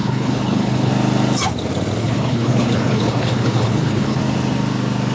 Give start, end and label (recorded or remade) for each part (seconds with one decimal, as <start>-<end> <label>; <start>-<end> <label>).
0.0-0.9 remade; 0.9-2.0 recorded; 2.0-4.2 remade; 4.2-5.1 recorded